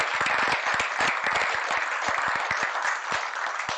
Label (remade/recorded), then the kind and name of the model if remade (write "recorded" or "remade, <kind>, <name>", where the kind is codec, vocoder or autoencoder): recorded